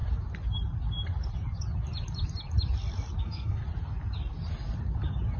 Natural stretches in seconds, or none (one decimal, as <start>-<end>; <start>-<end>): 0.0-3.2; 3.6-5.4